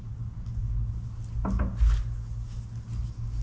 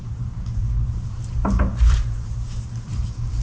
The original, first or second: first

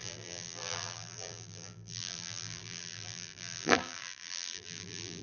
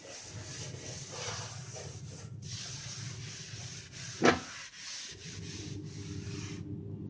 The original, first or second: second